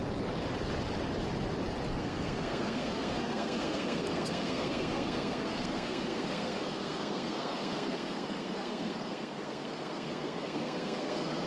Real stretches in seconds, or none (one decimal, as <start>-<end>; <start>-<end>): 0.0-1.9